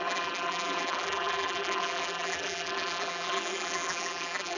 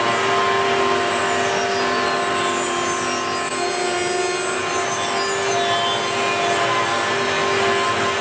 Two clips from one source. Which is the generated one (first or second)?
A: first